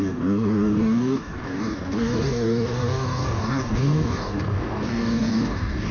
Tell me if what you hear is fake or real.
fake